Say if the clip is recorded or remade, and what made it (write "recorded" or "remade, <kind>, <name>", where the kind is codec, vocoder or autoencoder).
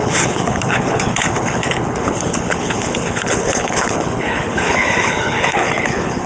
remade, codec, HILCodec